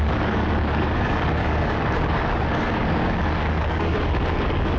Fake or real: fake